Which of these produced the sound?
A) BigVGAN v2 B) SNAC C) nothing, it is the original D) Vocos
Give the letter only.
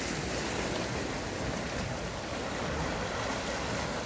C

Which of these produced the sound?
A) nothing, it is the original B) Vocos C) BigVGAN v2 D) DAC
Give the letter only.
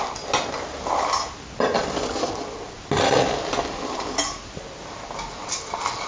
A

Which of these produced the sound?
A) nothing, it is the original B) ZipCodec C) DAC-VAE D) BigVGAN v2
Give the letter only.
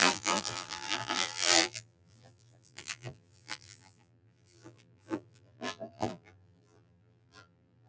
D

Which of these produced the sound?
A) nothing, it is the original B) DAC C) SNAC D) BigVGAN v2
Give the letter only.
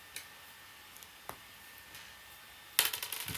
A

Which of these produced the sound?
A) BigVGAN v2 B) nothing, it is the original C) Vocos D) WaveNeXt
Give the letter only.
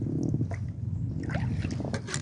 B